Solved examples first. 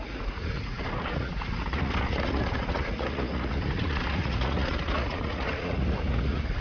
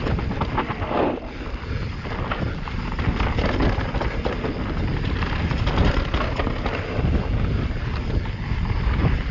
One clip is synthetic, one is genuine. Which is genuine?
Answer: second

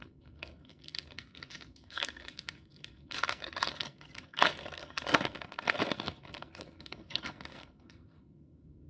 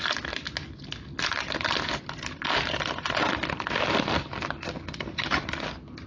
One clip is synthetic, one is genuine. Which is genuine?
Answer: second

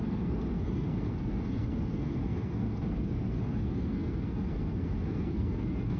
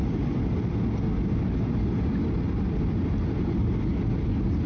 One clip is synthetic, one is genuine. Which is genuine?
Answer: second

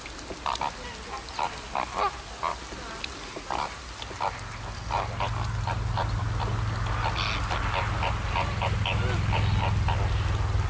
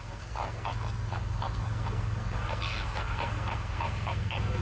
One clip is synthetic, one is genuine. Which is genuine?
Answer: first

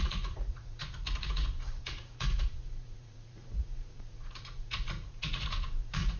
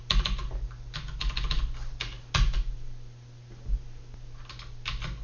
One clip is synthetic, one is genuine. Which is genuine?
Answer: second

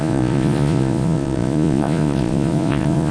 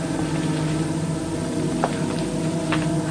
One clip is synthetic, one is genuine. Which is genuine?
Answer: second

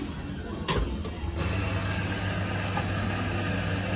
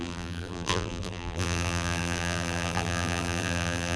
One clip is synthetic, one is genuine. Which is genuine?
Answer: first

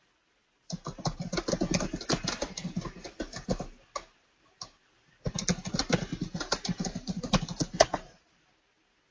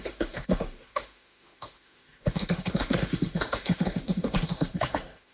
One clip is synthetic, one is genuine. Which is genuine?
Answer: first